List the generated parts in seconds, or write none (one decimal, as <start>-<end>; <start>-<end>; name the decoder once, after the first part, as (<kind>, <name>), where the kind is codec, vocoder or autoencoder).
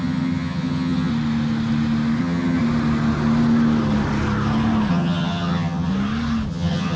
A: 0.0-1.1 (vocoder, HiFi-GAN); 2.2-2.6; 4.9-5.9; 6.5-7.0